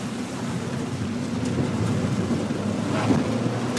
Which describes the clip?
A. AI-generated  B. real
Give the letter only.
B